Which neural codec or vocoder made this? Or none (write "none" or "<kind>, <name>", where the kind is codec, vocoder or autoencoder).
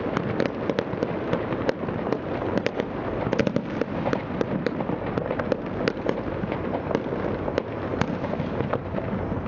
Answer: none